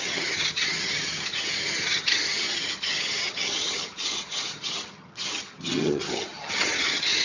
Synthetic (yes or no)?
yes